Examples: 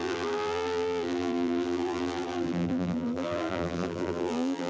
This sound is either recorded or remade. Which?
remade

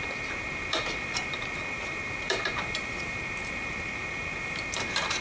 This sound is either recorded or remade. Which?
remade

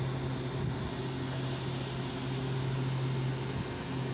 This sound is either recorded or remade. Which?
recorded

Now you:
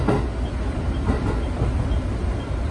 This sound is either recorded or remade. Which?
recorded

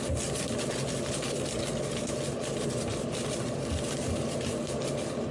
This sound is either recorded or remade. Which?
recorded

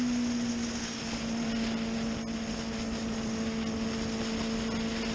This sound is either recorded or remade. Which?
recorded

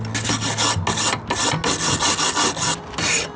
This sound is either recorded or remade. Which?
recorded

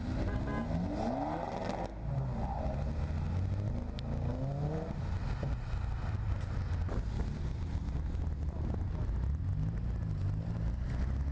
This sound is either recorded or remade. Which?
recorded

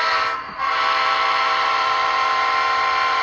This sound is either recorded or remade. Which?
remade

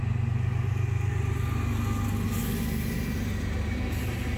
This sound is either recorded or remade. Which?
recorded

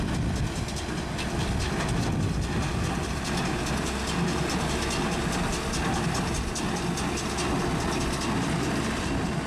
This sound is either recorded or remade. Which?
recorded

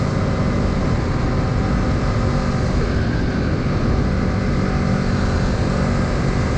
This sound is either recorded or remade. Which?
recorded